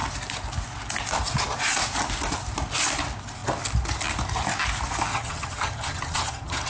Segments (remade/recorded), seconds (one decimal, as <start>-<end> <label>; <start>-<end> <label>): 0.0-5.1 recorded; 5.1-6.7 remade